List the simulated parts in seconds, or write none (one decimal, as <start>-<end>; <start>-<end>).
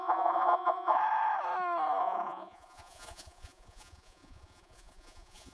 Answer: 0.0-1.0; 2.0-5.5